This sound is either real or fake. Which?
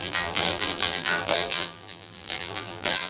fake